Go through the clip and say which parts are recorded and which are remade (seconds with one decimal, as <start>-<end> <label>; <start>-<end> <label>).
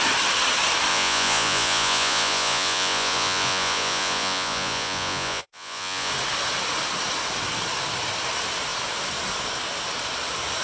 0.0-0.9 recorded; 0.9-6.1 remade; 6.1-10.6 recorded